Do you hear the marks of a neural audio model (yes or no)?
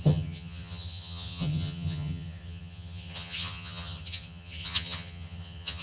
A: yes